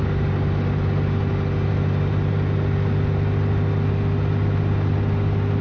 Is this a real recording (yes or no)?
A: yes